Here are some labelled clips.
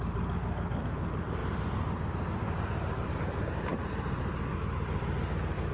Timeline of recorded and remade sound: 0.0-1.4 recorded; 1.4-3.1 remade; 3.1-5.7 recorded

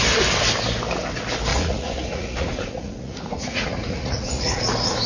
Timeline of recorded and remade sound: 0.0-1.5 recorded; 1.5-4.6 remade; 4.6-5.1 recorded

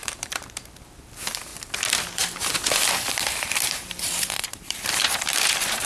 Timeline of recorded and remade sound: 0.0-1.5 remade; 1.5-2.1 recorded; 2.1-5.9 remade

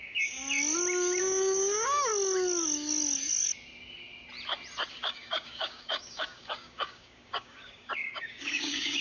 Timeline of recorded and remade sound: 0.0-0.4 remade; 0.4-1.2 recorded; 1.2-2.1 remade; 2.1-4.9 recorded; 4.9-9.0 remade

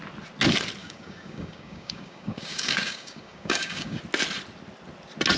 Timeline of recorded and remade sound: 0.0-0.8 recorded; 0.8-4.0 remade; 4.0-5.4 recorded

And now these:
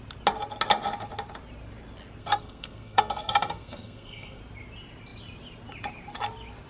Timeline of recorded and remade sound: 0.0-2.2 recorded; 2.2-4.4 remade; 4.4-6.7 recorded

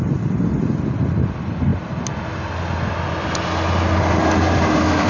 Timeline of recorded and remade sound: 0.0-5.1 recorded

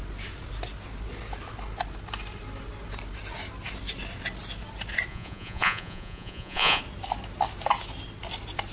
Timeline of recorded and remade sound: 0.0-5.1 recorded; 5.1-6.8 remade; 6.8-8.7 recorded